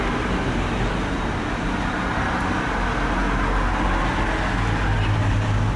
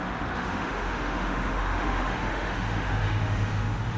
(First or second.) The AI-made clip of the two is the second